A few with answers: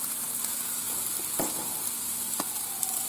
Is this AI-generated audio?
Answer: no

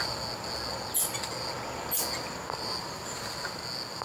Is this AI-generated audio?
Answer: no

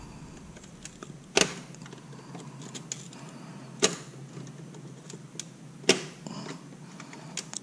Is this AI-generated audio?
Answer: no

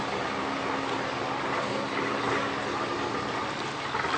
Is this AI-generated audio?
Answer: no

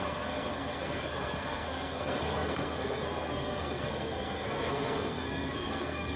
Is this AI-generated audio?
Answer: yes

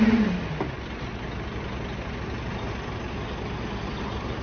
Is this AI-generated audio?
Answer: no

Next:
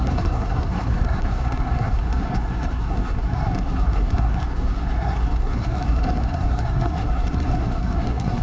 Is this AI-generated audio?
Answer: yes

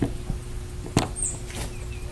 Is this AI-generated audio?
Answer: no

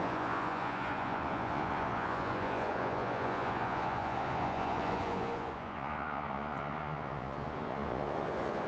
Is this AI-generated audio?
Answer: yes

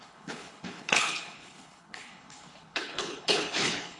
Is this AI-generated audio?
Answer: yes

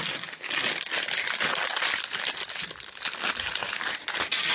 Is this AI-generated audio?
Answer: no